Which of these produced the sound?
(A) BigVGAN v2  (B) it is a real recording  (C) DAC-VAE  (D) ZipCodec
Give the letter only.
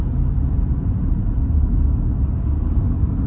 B